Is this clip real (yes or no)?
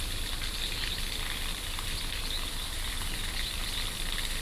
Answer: no